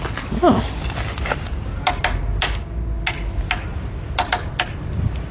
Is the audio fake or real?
real